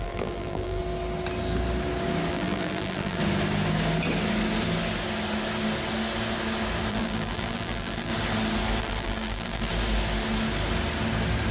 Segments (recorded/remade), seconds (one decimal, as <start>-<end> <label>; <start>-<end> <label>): 0.0-0.8 remade; 0.8-2.3 recorded; 2.3-3.2 remade; 3.2-6.9 recorded; 6.9-8.1 remade; 8.1-8.8 recorded; 8.8-9.7 remade; 9.7-11.5 recorded